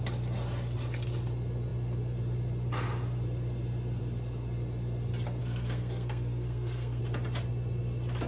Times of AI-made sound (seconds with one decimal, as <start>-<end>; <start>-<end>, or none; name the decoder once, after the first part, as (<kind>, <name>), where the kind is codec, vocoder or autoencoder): 5.4-7.0 (codec, SNAC)